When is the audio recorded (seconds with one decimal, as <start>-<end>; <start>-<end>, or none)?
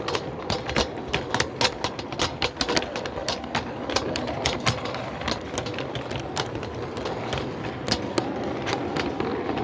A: 0.0-3.2; 5.1-9.6